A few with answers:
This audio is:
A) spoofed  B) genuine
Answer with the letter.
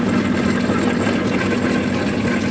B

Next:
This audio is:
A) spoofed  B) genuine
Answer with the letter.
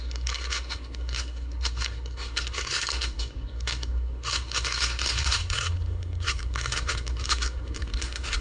A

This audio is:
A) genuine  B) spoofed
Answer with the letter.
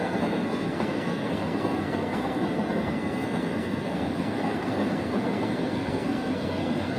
B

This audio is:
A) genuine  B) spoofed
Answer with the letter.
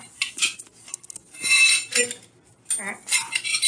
A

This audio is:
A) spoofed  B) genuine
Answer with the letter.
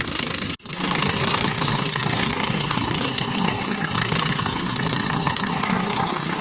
A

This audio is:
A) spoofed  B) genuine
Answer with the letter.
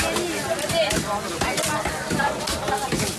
B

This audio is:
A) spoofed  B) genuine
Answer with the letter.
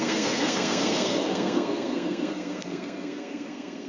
A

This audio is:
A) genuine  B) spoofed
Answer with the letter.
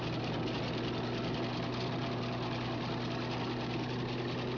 A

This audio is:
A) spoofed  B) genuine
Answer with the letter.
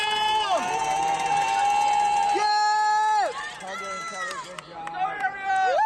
B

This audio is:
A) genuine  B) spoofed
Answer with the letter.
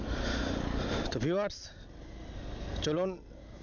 A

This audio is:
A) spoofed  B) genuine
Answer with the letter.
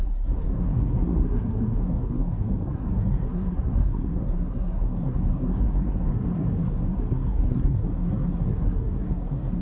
A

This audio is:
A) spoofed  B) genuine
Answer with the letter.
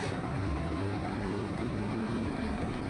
A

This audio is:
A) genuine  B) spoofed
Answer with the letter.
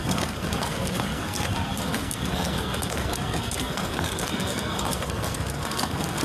B